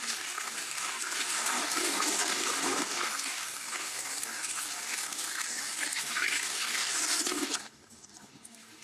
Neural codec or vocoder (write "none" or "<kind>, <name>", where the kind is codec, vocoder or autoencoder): codec, DAC